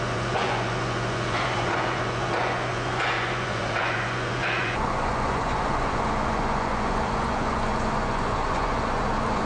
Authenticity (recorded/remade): remade